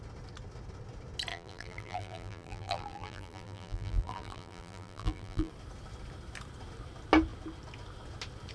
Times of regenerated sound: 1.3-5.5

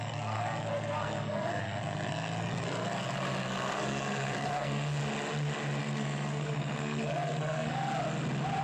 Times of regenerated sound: 0.0-5.0; 5.8-7.9

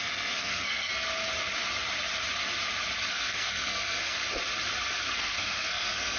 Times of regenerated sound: 0.0-0.9; 3.1-4.2; 5.0-6.2

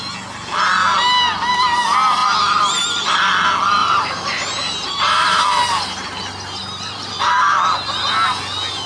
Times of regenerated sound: 2.2-2.8; 3.8-5.4; 6.6-7.1

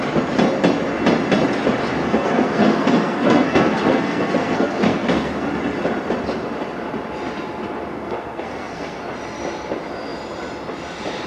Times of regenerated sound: 2.0-5.5; 7.9-9.0

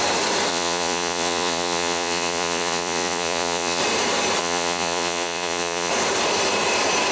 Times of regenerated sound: 0.5-3.8; 4.4-5.9

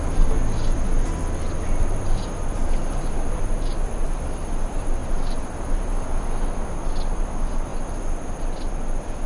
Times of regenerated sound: 2.8-3.4; 5.0-5.7